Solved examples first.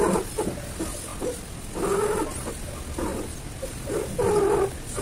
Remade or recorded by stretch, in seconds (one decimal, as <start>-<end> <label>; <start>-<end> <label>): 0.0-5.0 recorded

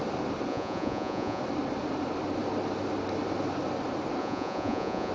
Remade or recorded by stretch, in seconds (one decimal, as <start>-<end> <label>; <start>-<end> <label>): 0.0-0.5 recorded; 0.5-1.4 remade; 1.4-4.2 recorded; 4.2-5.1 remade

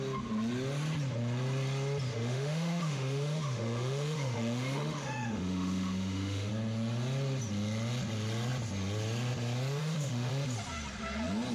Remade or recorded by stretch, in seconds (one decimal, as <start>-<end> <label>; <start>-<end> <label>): 0.0-2.1 recorded; 2.1-6.5 remade; 6.5-9.8 recorded; 9.8-10.3 remade; 10.3-11.5 recorded

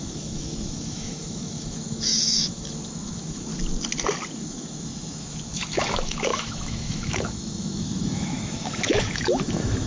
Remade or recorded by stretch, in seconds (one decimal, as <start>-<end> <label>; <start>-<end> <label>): 0.0-3.5 remade; 3.5-4.4 recorded; 4.4-9.9 remade